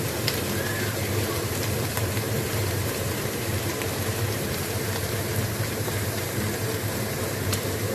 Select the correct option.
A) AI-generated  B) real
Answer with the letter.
A